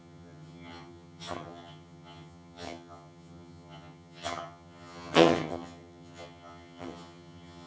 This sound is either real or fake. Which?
fake